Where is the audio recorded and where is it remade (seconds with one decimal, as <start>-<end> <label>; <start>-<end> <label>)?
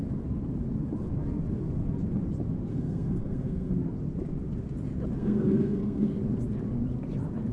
0.0-2.7 recorded; 2.7-3.7 remade; 3.7-5.2 recorded; 5.2-6.1 remade; 6.1-7.5 recorded